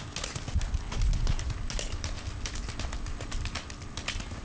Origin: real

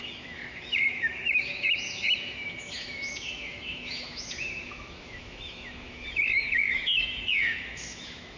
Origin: fake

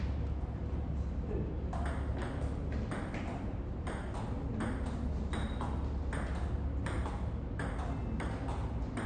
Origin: real